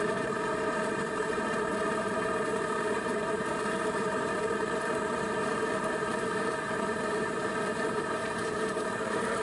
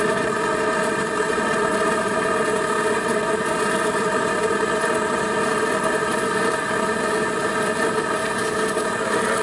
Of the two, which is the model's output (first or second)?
first